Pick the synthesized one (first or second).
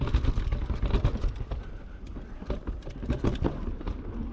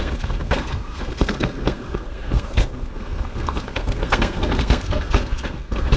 second